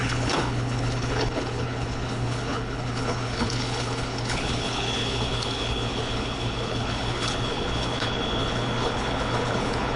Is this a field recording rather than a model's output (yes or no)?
no